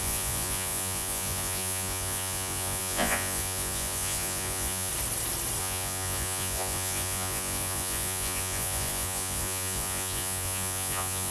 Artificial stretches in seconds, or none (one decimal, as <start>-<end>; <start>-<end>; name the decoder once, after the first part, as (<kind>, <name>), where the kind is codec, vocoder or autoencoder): 0.0-4.9 (vocoder, Vocos); 5.6-11.3